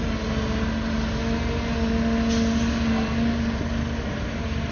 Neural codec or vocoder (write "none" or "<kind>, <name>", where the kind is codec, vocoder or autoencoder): none